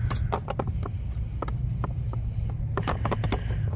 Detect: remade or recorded recorded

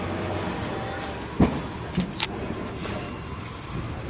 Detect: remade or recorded recorded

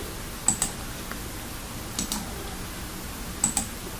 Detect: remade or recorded recorded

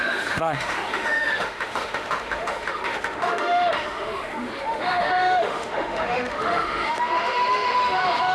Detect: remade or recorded remade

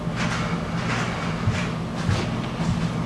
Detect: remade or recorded recorded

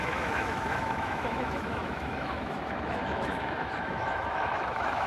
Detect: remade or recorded remade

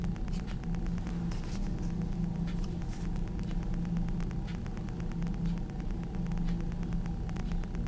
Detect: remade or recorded recorded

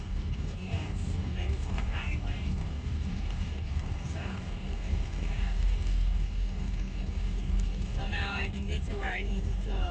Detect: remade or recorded remade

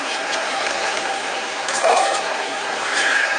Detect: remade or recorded remade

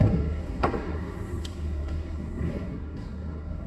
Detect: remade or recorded remade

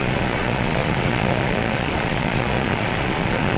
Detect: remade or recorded remade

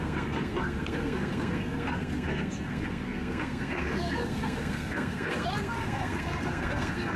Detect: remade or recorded remade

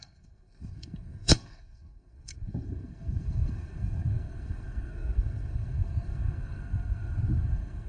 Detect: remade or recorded remade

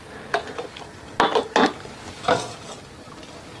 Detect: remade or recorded recorded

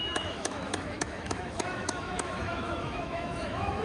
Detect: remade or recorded remade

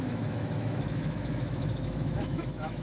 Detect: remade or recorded remade